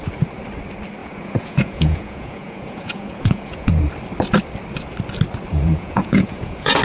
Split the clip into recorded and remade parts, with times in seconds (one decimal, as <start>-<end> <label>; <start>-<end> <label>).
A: 0.0-1.0 recorded; 1.0-3.9 remade; 3.9-5.5 recorded; 5.5-6.8 remade